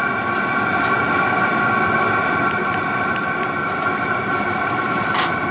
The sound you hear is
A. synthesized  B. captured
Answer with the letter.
A